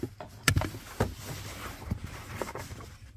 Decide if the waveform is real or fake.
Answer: real